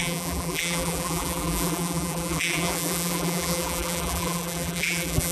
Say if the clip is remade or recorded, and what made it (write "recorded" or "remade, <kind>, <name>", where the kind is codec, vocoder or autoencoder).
remade, vocoder, BigVGAN v2